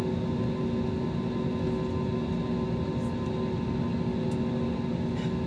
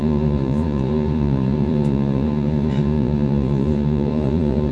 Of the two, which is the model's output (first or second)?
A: second